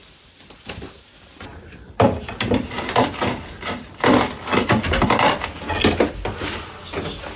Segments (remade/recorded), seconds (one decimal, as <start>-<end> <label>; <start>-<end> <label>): 0.0-4.1 remade; 4.1-7.4 recorded